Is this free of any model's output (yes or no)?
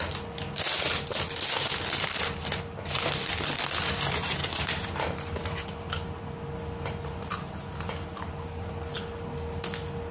yes